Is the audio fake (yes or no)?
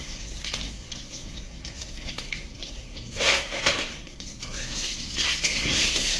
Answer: yes